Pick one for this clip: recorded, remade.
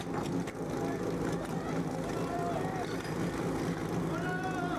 recorded